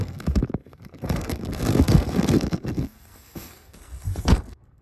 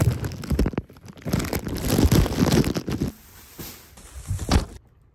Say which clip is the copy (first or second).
first